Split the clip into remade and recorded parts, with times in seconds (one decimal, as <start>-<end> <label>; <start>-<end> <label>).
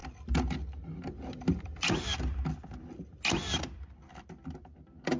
0.0-5.2 recorded